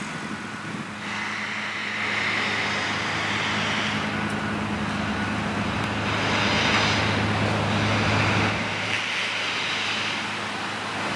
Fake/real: real